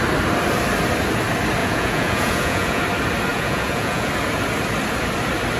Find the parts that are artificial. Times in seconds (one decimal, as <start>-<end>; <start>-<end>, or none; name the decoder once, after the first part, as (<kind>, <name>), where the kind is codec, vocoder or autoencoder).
1.6-2.8 (vocoder, Vocos); 3.3-4.1